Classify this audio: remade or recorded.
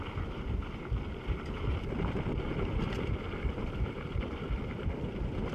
recorded